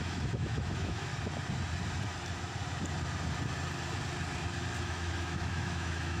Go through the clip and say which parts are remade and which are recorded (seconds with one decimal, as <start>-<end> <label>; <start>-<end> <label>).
0.0-1.1 remade; 1.1-4.8 recorded; 4.8-6.2 remade